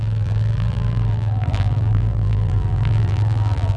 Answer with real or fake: fake